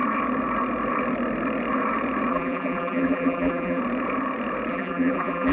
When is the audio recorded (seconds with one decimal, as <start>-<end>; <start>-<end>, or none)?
0.0-2.3; 3.8-4.7